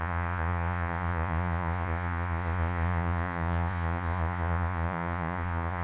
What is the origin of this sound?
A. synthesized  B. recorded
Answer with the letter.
A